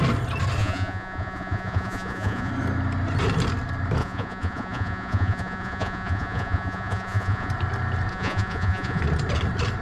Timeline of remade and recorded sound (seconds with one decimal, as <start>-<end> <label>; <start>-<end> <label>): 0.0-0.6 recorded; 0.6-2.5 remade; 2.5-4.0 recorded; 4.0-7.5 remade; 7.5-8.1 recorded; 8.1-9.0 remade; 9.0-9.8 recorded